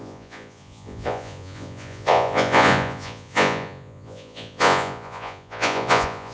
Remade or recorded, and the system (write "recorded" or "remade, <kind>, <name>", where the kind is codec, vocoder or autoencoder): remade, vocoder, Vocos